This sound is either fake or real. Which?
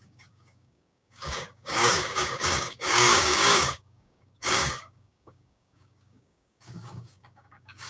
fake